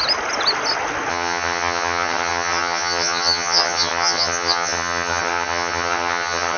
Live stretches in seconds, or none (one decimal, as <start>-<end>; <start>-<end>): 0.0-1.1